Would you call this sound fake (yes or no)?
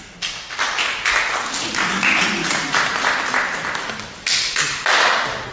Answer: no